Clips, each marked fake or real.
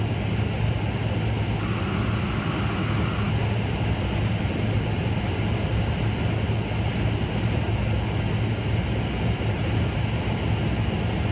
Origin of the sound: real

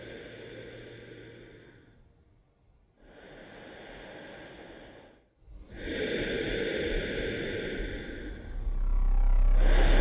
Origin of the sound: real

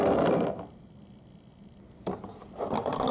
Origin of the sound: real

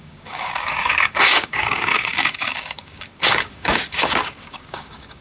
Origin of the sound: fake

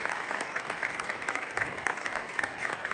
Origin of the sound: fake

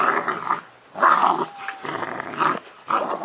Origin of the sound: real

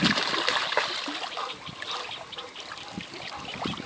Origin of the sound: real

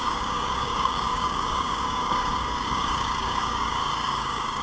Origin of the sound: fake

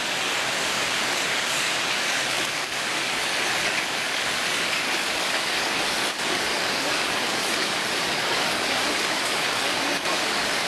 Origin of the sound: fake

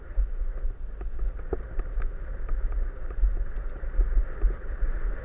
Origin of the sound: real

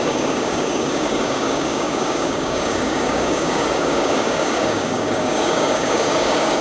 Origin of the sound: fake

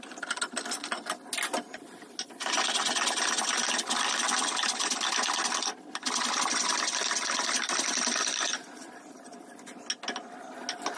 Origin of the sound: real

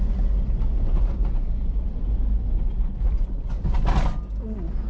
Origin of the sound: real